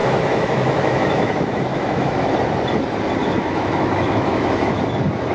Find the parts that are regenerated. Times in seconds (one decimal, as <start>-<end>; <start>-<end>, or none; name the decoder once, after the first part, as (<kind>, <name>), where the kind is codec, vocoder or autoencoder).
0.0-2.3 (autoencoder, DAC-VAE); 3.2-4.8